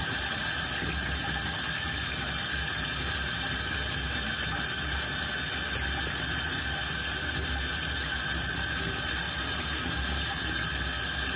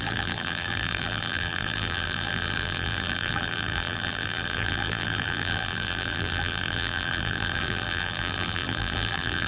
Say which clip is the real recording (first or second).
first